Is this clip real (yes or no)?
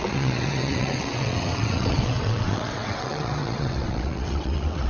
no